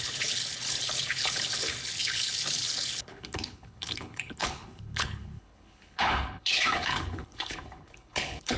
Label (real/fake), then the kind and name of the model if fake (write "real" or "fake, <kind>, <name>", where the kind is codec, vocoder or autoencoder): fake, codec, HILCodec